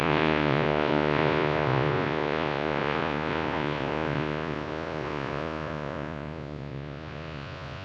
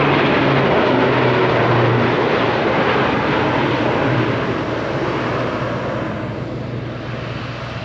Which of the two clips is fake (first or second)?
first